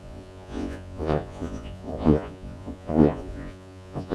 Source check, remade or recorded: remade